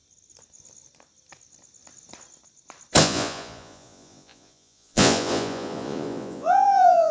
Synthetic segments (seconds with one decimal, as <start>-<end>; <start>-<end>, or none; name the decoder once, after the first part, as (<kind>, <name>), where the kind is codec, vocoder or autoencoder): 3.0-7.1 (vocoder, Vocos)